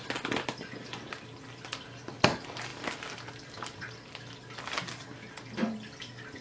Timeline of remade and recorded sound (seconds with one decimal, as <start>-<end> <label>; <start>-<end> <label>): 0.0-6.4 recorded